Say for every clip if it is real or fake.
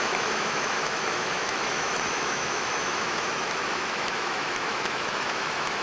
fake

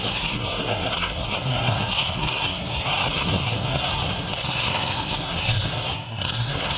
fake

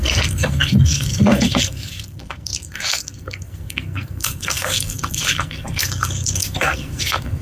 fake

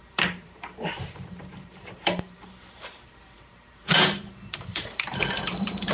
fake